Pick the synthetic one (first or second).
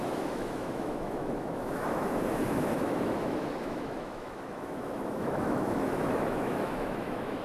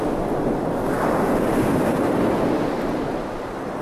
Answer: first